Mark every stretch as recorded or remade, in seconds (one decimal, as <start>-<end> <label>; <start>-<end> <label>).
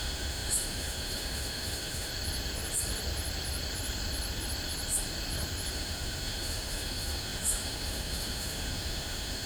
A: 0.0-2.1 remade; 2.1-5.7 recorded; 5.7-9.5 remade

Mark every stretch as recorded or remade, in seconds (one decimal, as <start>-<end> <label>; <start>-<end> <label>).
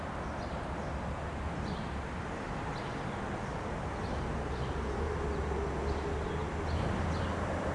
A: 0.0-7.7 recorded